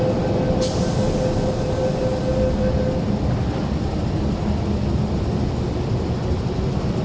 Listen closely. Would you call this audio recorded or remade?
recorded